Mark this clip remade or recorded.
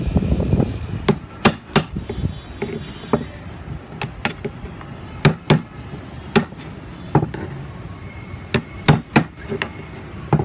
recorded